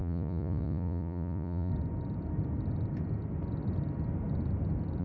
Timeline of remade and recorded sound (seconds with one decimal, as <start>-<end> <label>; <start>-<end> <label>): 0.0-1.7 remade; 1.7-5.0 recorded